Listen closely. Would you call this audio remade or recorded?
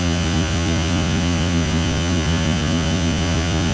remade